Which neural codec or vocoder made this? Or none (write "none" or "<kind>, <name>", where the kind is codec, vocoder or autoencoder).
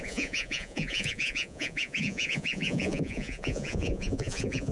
vocoder, Vocos